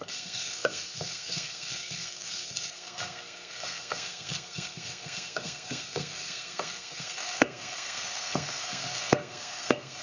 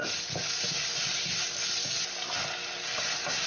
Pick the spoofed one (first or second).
first